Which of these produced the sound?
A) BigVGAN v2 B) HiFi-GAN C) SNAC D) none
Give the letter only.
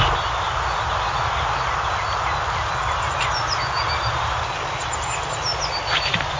D